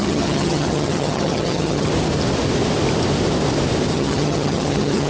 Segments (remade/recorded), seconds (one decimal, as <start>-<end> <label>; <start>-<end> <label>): 0.0-1.9 remade; 1.9-3.9 recorded; 3.9-5.1 remade

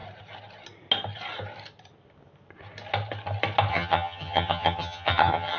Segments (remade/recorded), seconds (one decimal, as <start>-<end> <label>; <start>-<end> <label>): 0.0-3.7 recorded; 3.7-5.6 remade

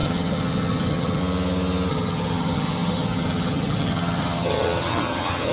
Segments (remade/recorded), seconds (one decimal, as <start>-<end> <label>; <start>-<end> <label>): 0.0-1.2 remade; 1.2-1.9 recorded; 1.9-5.5 remade

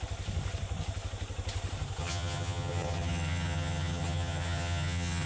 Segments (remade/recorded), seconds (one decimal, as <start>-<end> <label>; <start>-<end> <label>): 0.0-2.0 recorded; 2.0-5.3 remade

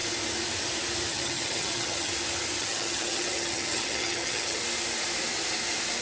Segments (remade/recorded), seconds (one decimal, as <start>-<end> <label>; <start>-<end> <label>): 0.0-1.1 recorded; 1.1-2.1 remade; 2.1-2.6 recorded; 2.6-4.6 remade; 4.6-6.0 recorded

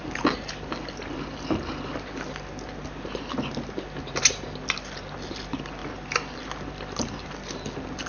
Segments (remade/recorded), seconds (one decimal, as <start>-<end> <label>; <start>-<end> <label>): 0.0-8.1 recorded

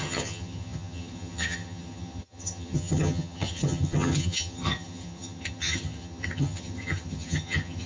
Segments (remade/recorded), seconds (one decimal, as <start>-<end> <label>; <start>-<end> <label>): 0.0-7.9 remade

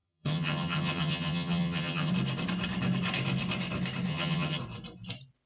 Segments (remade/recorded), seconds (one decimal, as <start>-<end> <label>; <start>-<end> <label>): 0.0-2.1 remade; 2.1-4.1 recorded; 4.1-4.6 remade; 4.6-5.5 recorded